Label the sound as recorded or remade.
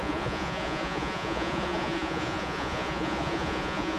remade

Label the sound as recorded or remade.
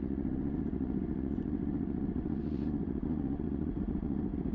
remade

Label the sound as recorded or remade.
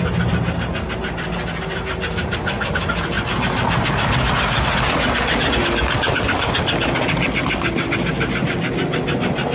recorded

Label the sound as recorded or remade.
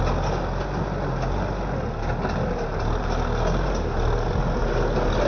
recorded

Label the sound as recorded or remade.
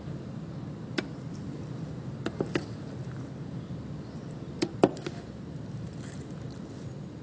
recorded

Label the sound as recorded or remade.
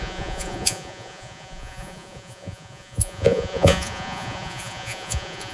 remade